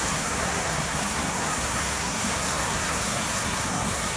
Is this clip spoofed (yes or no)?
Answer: yes